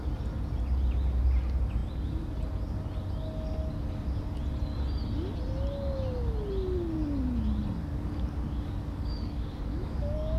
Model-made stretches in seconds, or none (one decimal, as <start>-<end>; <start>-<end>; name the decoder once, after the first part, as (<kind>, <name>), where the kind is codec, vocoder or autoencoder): 7.9-10.4 (codec, DAC)